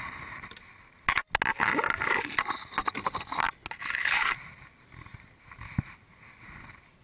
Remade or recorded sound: recorded